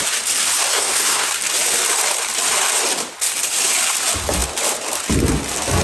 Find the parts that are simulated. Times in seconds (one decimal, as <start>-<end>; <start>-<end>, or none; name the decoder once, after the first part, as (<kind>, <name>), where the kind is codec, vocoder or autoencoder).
0.7-1.3 (codec, SNAC)